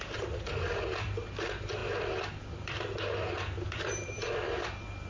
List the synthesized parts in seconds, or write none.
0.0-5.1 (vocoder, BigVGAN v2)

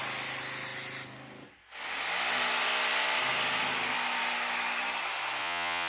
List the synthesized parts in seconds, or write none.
5.4-5.9 (vocoder, Vocos)

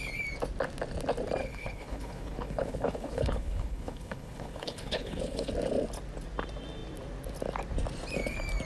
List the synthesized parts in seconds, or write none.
1.4-5.5 (codec, HILCodec)